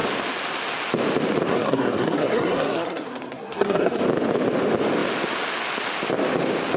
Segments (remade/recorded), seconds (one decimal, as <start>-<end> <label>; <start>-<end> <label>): 0.0-1.5 recorded; 1.5-4.0 remade; 4.0-6.8 recorded